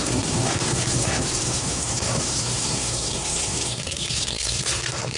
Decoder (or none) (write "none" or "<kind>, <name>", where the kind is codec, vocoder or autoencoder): codec, SNAC